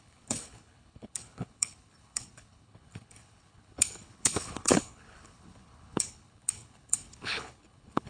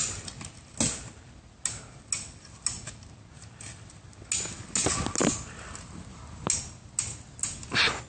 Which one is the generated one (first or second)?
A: first